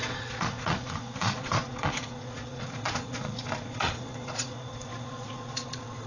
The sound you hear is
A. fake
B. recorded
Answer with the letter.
A